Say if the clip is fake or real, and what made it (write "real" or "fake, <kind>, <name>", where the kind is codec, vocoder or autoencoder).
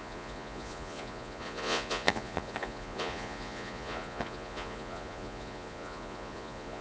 fake, vocoder, Vocos